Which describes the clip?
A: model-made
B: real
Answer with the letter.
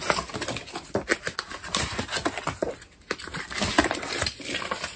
B